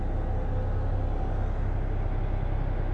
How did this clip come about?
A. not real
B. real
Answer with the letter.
B